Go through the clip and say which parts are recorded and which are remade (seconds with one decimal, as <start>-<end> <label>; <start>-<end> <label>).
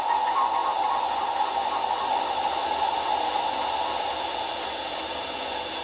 0.0-5.8 remade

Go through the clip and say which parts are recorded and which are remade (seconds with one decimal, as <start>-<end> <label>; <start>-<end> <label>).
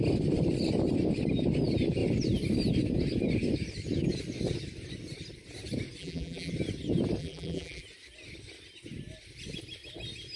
0.0-6.0 recorded; 6.0-6.5 remade; 6.5-7.2 recorded; 7.2-7.8 remade; 7.8-10.4 recorded